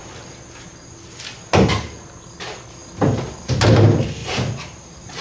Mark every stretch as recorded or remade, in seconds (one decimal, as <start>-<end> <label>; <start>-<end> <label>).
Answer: 0.0-4.2 recorded; 4.2-5.2 remade